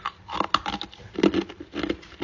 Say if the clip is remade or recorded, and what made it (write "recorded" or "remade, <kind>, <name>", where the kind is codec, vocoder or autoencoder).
recorded